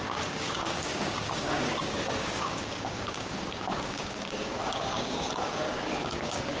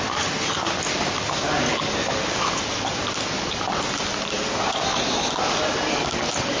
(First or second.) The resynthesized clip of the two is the first